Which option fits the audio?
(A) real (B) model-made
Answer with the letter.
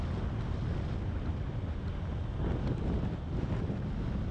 A